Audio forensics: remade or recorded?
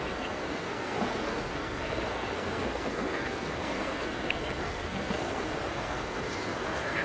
remade